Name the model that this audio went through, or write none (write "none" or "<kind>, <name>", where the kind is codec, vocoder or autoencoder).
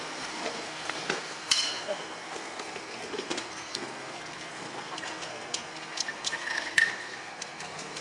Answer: codec, SNAC